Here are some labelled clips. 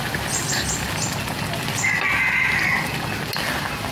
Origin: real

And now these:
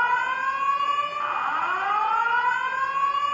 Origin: real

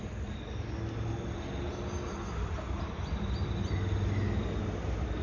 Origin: real